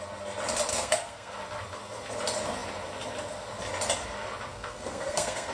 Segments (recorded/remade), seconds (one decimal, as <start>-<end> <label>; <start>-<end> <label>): 0.0-0.7 recorded; 0.7-1.3 remade; 1.3-4.5 recorded; 4.5-5.5 remade